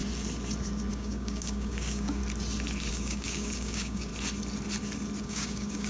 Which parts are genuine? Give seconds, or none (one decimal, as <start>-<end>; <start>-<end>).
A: 0.0-0.9; 2.2-2.9; 4.1-5.2